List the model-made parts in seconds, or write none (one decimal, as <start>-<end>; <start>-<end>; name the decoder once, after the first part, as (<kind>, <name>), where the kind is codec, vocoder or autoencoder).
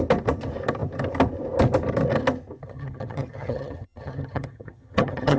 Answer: 2.6-5.4 (vocoder, HiFi-GAN)